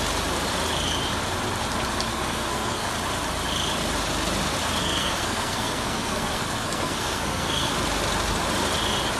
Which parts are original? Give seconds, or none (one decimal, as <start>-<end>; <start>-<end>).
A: 0.0-2.1; 2.9-4.8; 7.7-9.2